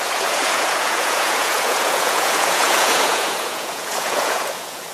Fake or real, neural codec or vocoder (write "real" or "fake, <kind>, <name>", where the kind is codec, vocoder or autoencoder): fake, vocoder, Vocos